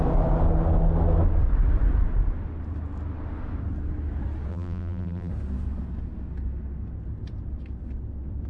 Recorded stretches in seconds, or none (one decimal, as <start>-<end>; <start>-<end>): 0.0-4.5; 5.3-8.5